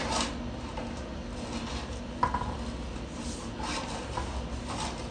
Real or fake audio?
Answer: real